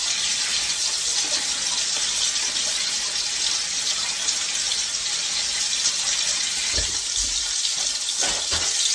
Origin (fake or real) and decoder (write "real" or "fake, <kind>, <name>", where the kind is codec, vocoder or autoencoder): real